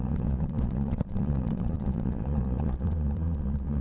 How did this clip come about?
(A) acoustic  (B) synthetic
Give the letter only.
B